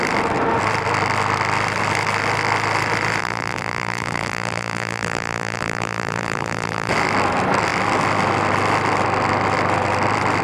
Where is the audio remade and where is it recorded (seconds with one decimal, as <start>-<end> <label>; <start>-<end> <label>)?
0.0-3.2 recorded; 3.2-6.9 remade; 6.9-10.4 recorded